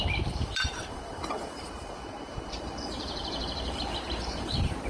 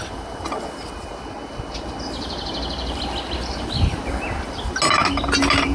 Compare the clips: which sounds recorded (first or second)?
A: second